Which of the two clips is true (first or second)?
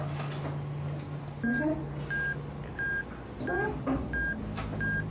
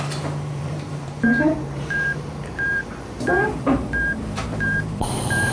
first